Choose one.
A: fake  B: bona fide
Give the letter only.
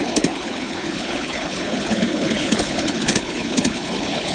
A